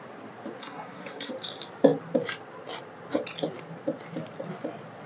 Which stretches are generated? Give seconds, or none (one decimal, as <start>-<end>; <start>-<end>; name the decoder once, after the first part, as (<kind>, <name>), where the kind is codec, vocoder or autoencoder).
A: 0.6-1.3 (codec, SNAC)